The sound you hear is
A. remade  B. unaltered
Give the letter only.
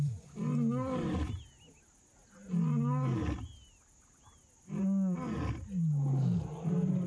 B